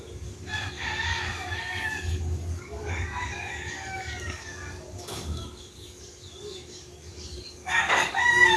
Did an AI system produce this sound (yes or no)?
yes